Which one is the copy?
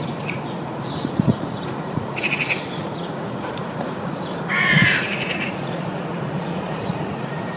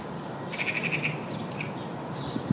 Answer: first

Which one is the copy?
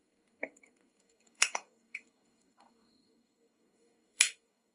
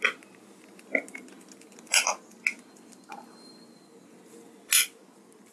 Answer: first